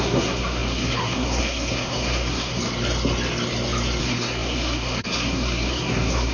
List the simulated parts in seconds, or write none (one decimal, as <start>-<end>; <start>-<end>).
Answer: 0.0-2.6; 4.0-6.3

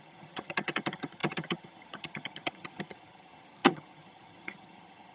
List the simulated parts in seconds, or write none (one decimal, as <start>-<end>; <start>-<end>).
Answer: 0.0-5.1

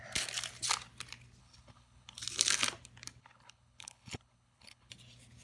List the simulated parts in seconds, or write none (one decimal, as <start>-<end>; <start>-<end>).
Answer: 1.4-2.2; 3.2-4.9

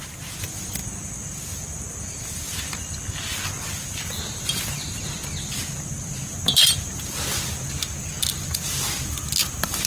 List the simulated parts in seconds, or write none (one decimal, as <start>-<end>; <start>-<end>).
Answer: none

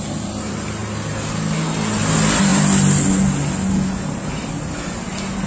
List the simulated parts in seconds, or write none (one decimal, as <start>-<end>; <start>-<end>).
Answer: none